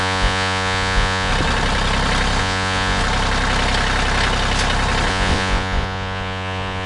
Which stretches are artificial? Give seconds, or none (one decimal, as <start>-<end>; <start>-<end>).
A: 0.0-1.3; 2.4-3.0; 5.1-6.9